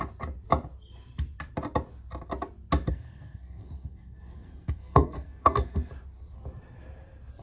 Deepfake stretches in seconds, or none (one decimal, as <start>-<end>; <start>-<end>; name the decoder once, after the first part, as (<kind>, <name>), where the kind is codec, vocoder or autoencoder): 2.9-5.9 (codec, SNAC)